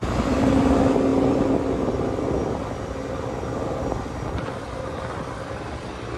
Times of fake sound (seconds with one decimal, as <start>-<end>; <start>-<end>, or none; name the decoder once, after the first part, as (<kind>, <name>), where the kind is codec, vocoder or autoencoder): none